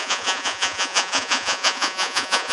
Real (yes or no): no